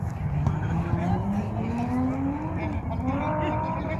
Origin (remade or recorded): recorded